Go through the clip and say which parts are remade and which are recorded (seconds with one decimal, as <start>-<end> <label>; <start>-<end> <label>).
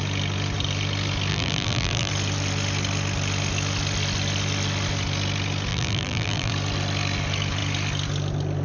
0.0-1.3 recorded; 1.3-2.1 remade; 2.1-5.7 recorded; 5.7-6.5 remade; 6.5-8.6 recorded